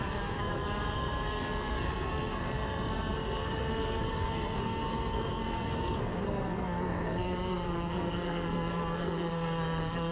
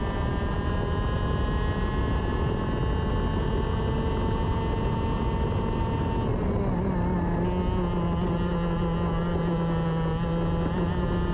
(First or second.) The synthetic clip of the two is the first